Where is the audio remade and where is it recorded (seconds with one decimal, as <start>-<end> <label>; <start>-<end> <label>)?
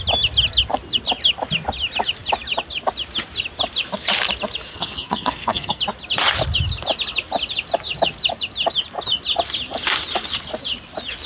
0.0-4.7 recorded; 4.7-5.8 remade; 5.8-11.3 recorded